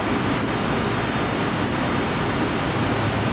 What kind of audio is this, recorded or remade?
recorded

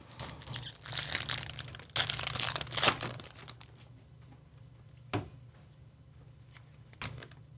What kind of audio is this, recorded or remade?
recorded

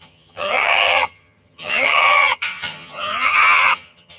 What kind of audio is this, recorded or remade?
remade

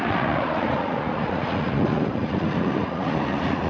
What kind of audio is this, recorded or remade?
remade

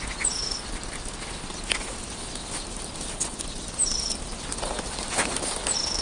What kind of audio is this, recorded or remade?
recorded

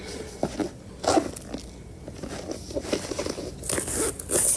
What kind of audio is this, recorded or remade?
recorded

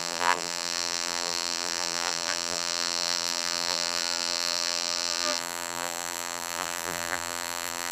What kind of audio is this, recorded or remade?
remade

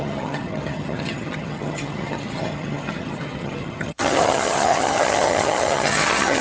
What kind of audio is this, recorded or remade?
remade